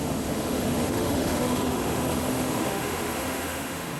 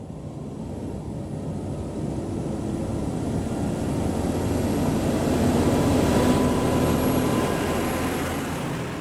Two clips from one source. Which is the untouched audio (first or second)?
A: second